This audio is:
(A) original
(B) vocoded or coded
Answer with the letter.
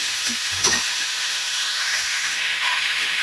B